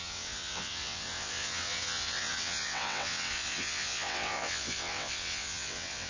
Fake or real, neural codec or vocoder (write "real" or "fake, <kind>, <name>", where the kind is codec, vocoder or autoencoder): fake, vocoder, WaveNeXt